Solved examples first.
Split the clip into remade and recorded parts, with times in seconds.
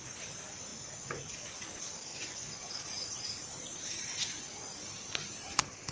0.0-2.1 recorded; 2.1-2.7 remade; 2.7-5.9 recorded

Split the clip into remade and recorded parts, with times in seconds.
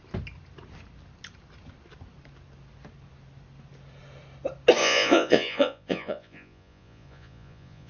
0.0-4.8 recorded; 4.8-7.9 remade